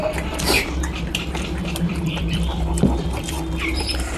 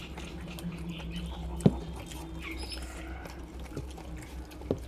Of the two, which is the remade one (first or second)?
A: first